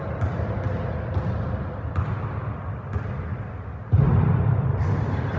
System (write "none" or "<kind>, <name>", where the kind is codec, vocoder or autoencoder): none